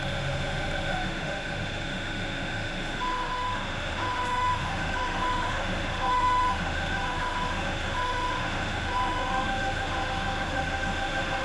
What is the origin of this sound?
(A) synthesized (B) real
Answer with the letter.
A